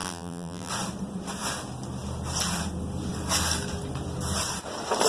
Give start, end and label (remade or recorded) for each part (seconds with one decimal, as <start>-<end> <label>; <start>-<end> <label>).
0.0-0.7 remade; 0.7-5.1 recorded